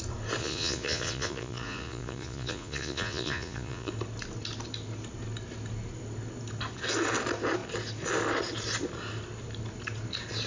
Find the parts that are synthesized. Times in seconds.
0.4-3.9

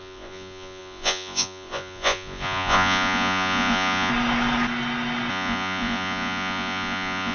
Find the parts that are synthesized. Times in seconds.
0.0-4.1; 5.3-7.3

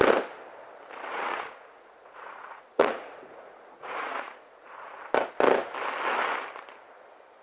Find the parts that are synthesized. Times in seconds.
1.1-5.0

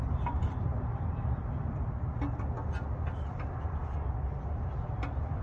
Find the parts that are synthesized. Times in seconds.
none

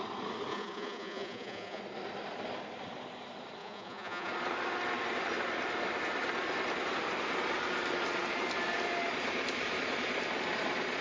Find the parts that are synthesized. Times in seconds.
0.5-1.8; 3.6-4.3

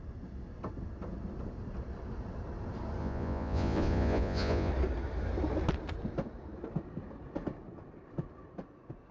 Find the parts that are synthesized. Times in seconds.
3.0-4.7

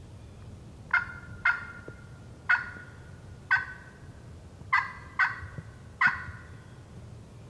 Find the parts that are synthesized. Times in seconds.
none